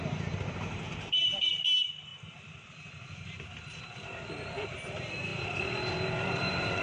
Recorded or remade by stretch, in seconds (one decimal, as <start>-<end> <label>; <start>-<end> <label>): 0.0-1.2 remade; 1.2-6.8 recorded